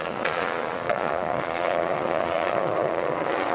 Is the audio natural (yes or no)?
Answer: no